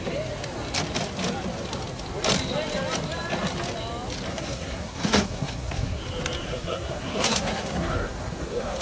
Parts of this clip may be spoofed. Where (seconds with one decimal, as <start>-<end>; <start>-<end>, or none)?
4.3-6.0; 6.4-8.8